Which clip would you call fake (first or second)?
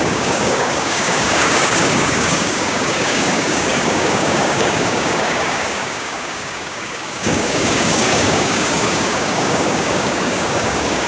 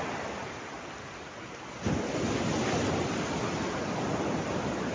first